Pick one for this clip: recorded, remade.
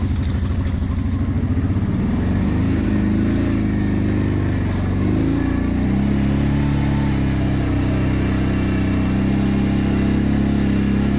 recorded